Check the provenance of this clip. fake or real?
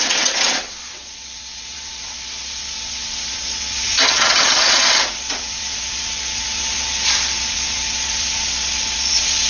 fake